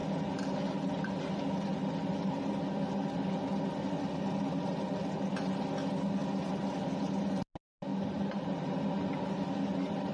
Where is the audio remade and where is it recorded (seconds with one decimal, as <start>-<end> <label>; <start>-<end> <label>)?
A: 0.0-7.9 recorded; 7.9-8.8 remade; 8.8-10.1 recorded